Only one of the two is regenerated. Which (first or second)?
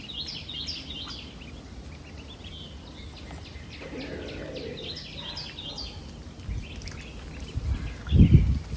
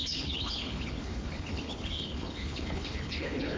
second